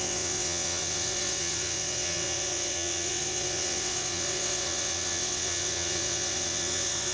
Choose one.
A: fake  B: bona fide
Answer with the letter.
A